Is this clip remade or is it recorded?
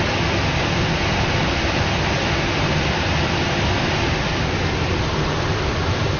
recorded